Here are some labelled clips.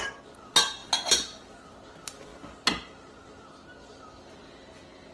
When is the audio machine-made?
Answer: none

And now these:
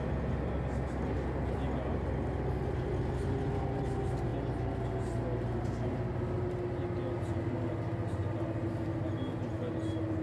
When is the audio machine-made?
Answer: none